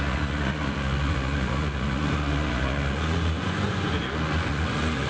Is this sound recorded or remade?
remade